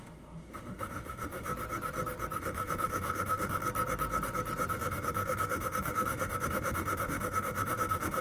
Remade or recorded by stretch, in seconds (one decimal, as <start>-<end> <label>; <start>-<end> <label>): 0.0-1.5 remade; 1.5-2.4 recorded; 2.4-3.6 remade; 3.6-4.7 recorded; 4.7-8.2 remade